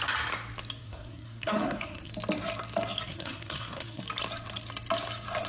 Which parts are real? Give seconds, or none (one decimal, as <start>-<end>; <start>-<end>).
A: 0.0-0.8; 2.1-3.1; 4.0-5.5